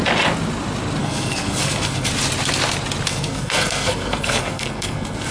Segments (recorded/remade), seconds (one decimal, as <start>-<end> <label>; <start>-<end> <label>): 0.0-1.0 recorded; 1.0-2.1 remade; 2.1-3.1 recorded; 3.1-5.3 remade